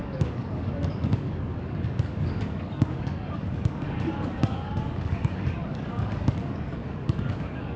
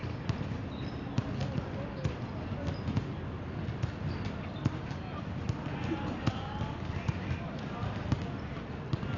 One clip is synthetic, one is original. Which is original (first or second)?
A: second